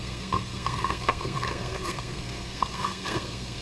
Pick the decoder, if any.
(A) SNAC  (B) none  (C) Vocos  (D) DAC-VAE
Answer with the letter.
A